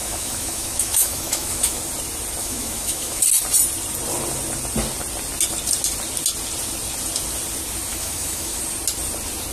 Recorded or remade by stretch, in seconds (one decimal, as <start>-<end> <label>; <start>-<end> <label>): 0.0-1.8 remade; 1.8-2.4 recorded; 2.4-3.2 remade; 3.2-7.9 recorded; 7.9-8.6 remade; 8.6-9.5 recorded